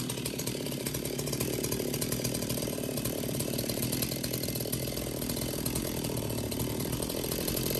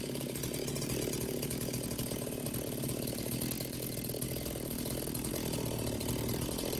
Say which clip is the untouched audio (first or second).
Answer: second